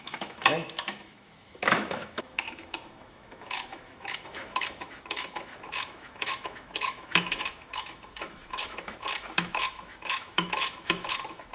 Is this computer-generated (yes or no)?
yes